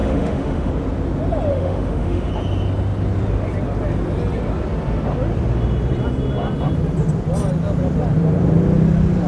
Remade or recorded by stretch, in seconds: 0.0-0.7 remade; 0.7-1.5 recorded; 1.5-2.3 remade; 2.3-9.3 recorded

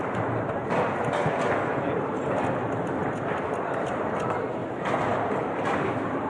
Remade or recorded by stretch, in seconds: 0.0-6.3 recorded

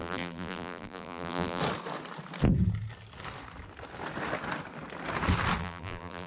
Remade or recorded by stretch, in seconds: 0.0-1.6 remade; 1.6-5.6 recorded; 5.6-6.3 remade

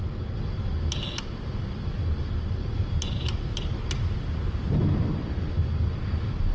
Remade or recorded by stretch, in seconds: 0.0-6.5 recorded

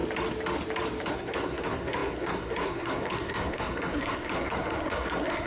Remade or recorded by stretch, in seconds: 0.0-1.1 recorded; 1.1-5.5 remade

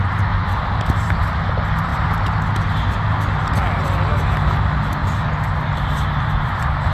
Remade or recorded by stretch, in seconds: 0.0-6.9 recorded

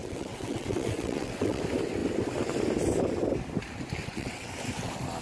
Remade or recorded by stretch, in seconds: 0.0-1.6 remade; 1.6-4.0 recorded; 4.0-4.5 remade; 4.5-5.2 recorded